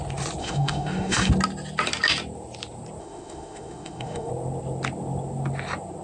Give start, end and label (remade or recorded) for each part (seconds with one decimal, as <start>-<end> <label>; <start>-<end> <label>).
0.0-0.4 recorded; 0.4-1.3 remade; 1.3-3.0 recorded; 3.0-4.3 remade; 4.3-6.0 recorded